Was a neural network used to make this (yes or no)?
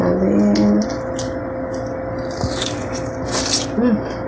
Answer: no